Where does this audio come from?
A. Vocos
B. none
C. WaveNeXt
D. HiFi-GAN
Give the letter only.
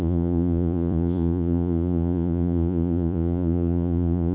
A